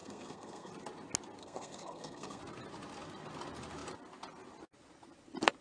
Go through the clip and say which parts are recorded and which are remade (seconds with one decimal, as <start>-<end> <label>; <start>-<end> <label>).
0.0-0.7 remade; 0.7-1.4 recorded; 1.4-2.4 remade; 2.4-5.6 recorded